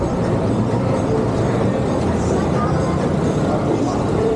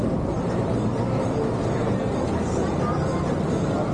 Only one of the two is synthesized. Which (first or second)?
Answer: first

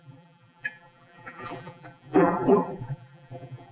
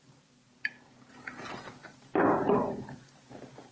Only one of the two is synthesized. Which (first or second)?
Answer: first